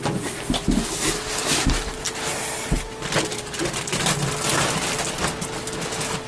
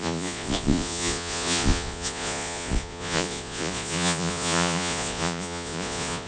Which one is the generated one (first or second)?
second